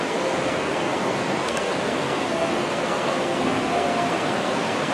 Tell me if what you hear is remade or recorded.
remade